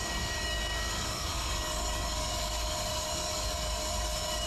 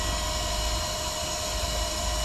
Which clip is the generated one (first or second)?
first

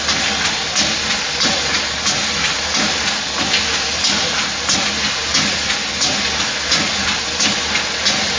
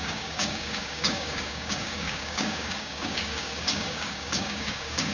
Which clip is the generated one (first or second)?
second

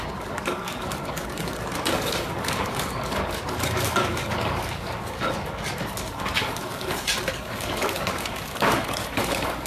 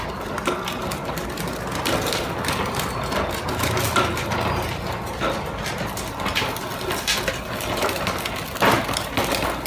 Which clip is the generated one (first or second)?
first